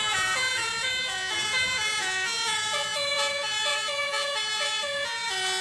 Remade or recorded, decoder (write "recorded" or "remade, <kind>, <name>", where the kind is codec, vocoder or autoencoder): remade, vocoder, Vocos